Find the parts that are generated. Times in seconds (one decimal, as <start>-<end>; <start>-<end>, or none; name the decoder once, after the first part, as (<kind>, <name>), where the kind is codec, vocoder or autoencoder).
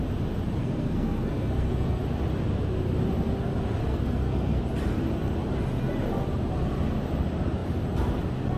0.6-2.0 (codec, SNAC); 3.8-4.6